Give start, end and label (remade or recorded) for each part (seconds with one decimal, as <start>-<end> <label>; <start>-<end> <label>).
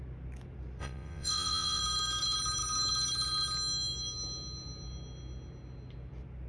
0.0-0.8 recorded; 0.8-1.8 remade; 1.8-6.5 recorded